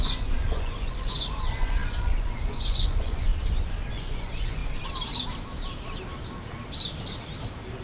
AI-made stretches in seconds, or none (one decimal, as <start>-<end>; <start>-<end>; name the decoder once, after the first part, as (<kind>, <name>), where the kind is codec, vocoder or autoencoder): 0.0-3.3 (vocoder, Vocos); 3.9-4.6